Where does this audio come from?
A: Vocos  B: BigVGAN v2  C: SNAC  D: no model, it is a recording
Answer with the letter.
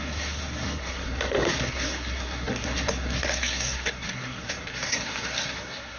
C